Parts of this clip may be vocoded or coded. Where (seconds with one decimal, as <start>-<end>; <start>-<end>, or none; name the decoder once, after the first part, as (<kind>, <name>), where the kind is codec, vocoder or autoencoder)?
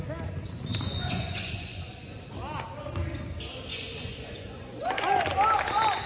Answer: 0.7-2.3 (vocoder, Vocos); 3.7-5.0